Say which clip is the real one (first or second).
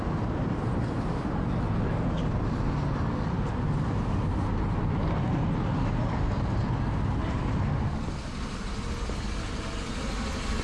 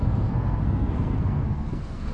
first